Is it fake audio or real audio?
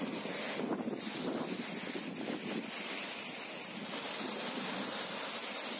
real